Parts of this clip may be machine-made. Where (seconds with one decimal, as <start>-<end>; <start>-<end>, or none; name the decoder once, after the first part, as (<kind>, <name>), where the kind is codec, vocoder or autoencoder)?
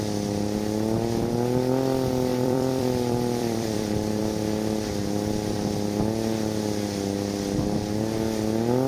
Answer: 2.3-4.2 (vocoder, BigVGAN v2)